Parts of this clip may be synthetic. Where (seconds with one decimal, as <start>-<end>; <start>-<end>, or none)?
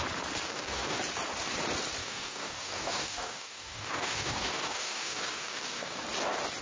0.4-1.0; 2.0-6.0